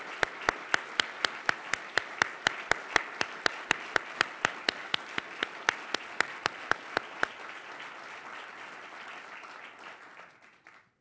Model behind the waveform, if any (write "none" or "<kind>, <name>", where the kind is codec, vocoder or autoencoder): none